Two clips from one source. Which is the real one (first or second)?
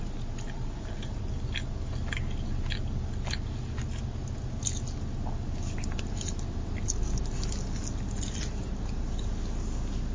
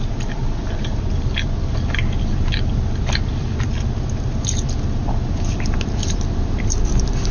first